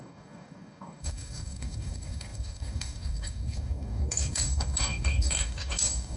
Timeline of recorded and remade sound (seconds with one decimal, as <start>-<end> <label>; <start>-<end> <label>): 0.0-6.2 remade